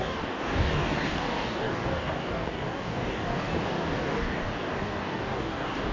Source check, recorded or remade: remade